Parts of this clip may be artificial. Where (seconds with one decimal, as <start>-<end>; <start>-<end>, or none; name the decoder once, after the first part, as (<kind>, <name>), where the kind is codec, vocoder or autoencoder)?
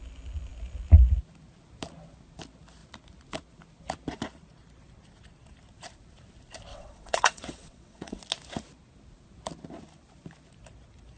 6.7-8.2 (vocoder, WaveNeXt)